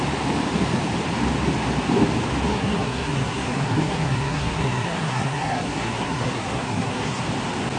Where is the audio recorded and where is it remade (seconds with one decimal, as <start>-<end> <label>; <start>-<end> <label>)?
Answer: 0.0-2.5 recorded; 2.5-7.2 remade; 7.2-7.8 recorded